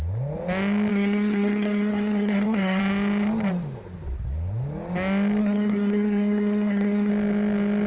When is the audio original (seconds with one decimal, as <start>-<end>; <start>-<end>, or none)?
0.0-0.9; 2.8-5.4; 7.1-7.9